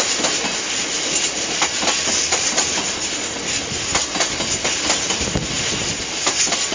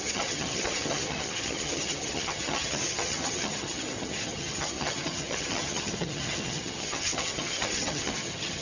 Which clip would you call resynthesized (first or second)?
second